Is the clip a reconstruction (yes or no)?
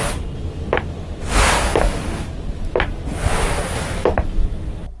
no